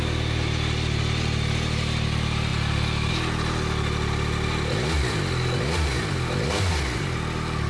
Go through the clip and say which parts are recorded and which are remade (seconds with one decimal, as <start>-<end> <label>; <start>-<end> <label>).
0.0-7.7 recorded